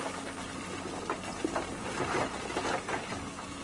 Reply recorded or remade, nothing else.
recorded